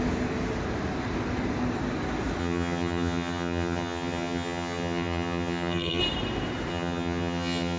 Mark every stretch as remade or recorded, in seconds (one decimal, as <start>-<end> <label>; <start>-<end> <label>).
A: 0.0-2.4 recorded; 2.4-6.0 remade; 6.0-6.7 recorded; 6.7-7.8 remade